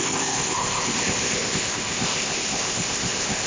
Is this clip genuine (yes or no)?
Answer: no